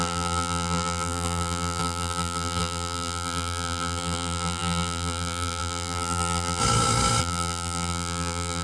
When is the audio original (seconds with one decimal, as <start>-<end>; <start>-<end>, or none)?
6.6-7.2